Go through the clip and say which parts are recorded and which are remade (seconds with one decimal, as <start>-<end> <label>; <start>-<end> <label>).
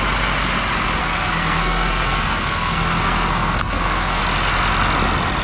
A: 0.0-1.0 recorded; 1.0-4.2 remade; 4.2-5.4 recorded